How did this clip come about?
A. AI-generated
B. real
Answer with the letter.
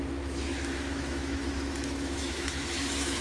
A